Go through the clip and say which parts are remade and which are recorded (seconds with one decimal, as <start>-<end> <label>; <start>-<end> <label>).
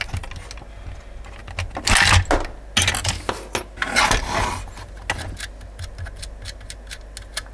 0.0-7.5 recorded